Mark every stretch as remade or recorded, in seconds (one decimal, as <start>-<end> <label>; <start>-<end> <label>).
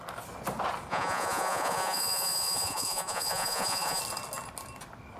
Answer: 0.0-0.9 recorded; 0.9-4.0 remade; 4.0-5.2 recorded